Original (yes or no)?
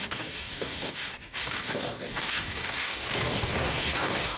no